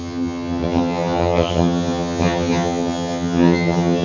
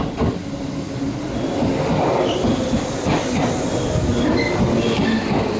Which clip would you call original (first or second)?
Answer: second